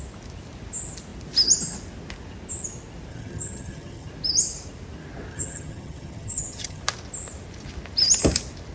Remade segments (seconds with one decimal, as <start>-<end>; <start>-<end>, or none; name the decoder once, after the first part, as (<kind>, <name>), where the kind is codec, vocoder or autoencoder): 3.1-4.1 (vocoder, HiFi-GAN); 5.3-6.8